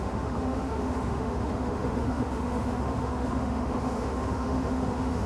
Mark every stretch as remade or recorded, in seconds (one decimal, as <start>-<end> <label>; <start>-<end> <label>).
0.0-5.3 remade